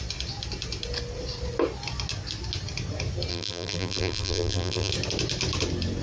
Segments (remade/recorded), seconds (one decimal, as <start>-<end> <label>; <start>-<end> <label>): 0.0-3.3 recorded; 3.3-4.9 remade; 4.9-6.0 recorded